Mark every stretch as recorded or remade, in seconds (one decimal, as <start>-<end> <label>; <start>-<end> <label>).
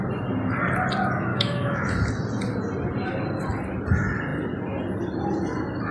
0.0-1.3 recorded; 1.3-1.9 remade; 1.9-5.9 recorded